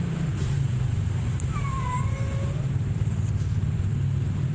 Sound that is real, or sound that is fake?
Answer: fake